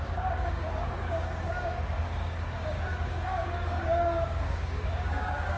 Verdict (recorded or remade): remade